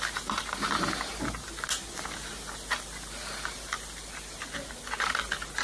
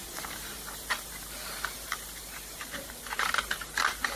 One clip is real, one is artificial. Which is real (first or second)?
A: first